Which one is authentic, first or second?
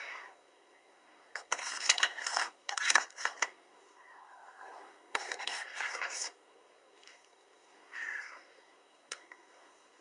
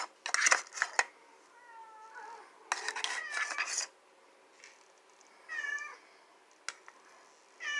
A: second